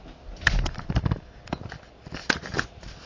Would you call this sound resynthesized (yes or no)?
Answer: no